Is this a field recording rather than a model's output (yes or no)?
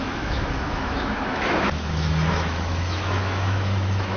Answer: no